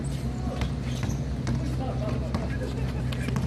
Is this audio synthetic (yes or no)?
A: no